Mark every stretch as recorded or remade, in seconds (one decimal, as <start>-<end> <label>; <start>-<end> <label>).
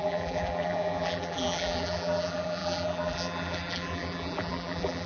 0.0-5.1 remade